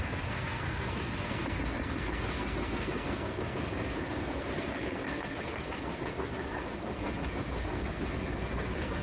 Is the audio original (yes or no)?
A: no